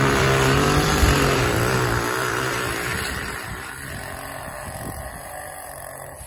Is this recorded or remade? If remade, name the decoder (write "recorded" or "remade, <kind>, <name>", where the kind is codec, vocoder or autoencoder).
recorded